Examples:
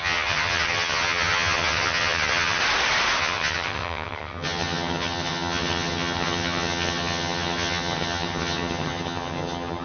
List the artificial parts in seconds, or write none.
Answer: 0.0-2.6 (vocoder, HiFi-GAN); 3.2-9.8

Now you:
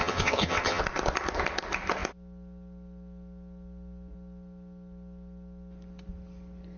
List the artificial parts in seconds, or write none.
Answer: 0.0-0.8 (vocoder, HiFi-GAN)

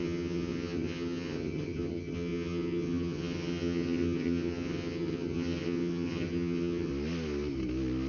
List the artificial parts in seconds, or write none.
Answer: 0.0-6.9 (vocoder, HiFi-GAN)